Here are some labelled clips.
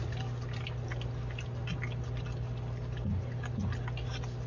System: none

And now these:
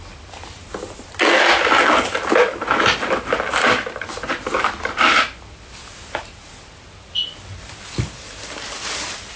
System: none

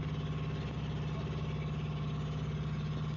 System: none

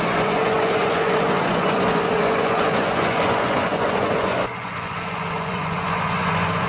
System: vocoder, Vocos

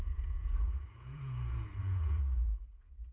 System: vocoder, Vocos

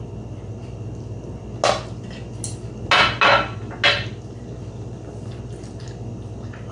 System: none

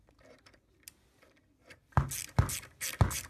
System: none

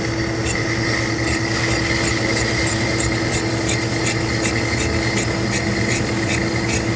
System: none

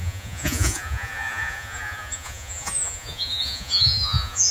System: vocoder, Vocos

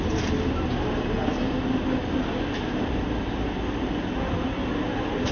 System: none